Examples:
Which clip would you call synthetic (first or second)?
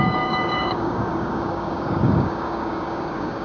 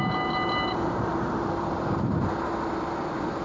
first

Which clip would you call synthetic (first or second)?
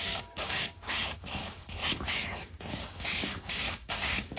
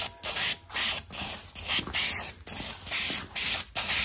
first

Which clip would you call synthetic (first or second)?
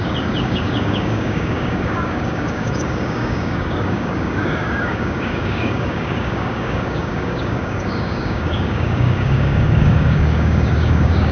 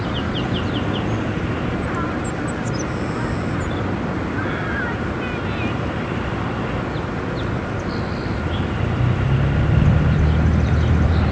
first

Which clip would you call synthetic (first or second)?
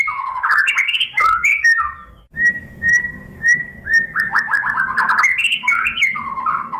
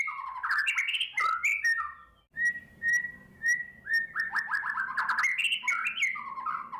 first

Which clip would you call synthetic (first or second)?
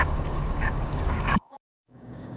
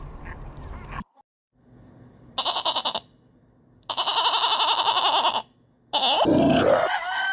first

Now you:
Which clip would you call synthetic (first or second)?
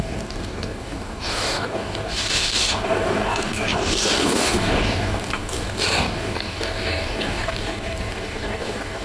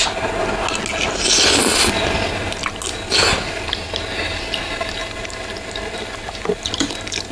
first